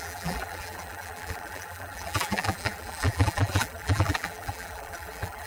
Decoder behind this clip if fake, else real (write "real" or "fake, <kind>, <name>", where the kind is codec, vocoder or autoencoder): fake, vocoder, BigVGAN v2